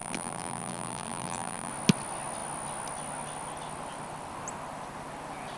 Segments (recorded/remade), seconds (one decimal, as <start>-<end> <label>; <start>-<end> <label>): 0.0-1.7 remade; 1.7-5.6 recorded